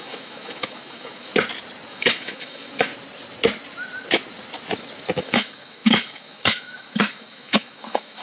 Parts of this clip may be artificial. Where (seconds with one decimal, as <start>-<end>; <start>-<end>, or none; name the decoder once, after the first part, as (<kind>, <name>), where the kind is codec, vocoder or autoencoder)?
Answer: 0.0-1.3 (autoencoder, DAC-VAE); 1.9-2.9; 5.2-8.2